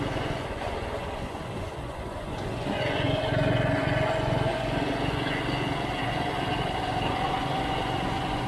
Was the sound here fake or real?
fake